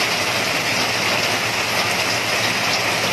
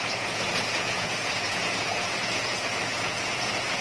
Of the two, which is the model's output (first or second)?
second